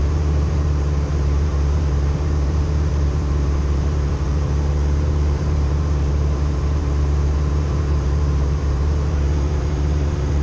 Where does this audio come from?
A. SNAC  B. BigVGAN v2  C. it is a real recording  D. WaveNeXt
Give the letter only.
B